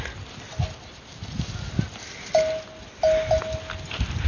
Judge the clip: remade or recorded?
recorded